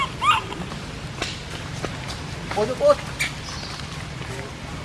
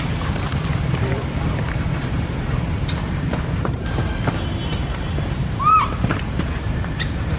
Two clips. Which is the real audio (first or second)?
first